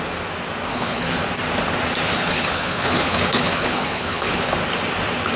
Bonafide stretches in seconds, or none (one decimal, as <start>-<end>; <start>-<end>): 0.0-0.7; 1.2-2.1; 4.5-5.4